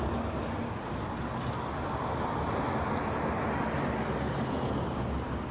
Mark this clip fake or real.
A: real